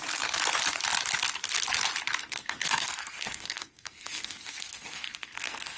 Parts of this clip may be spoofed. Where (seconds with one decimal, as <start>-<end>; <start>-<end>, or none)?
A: 2.2-5.8